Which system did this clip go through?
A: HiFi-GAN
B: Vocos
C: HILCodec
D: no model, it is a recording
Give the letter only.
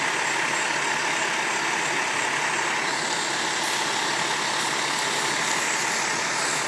D